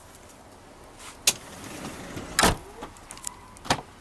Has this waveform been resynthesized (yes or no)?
no